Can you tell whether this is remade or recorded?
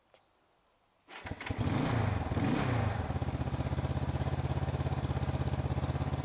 recorded